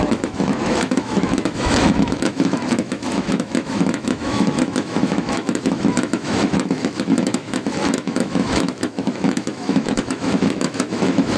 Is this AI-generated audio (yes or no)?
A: yes